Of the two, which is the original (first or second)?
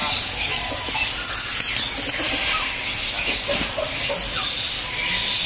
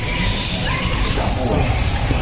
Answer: first